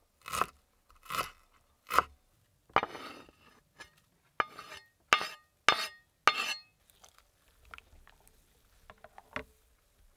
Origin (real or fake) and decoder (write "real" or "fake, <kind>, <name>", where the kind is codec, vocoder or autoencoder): real